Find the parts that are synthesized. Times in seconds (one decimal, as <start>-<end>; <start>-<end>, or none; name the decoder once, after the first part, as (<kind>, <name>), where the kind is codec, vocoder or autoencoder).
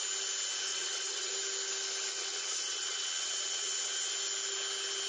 0.7-1.3 (vocoder, WaveNeXt); 2.1-4.1